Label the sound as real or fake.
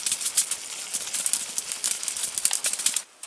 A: real